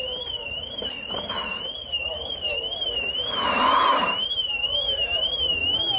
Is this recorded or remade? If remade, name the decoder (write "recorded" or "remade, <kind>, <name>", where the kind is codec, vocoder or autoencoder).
remade, vocoder, BigVGAN v2